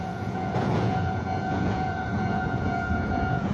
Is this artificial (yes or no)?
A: yes